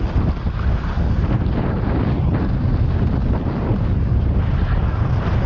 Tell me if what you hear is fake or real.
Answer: real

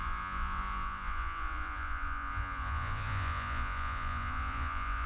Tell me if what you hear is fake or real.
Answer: fake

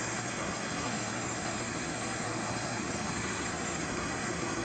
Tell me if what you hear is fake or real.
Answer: fake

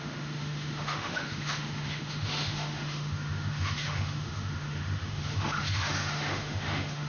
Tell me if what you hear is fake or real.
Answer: fake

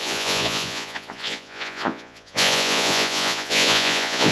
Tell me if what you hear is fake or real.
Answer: fake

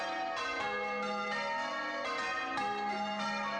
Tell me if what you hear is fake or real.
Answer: real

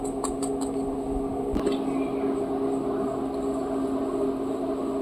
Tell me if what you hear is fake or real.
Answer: real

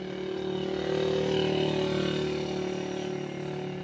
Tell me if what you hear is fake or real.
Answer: real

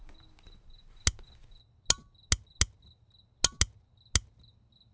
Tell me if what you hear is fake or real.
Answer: real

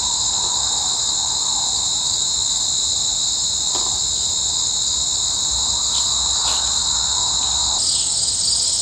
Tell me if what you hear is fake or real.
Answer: real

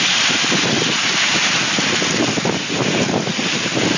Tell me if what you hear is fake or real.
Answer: real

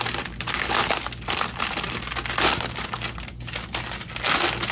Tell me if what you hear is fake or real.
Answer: real